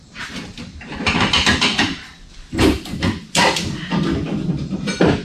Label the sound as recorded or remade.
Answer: remade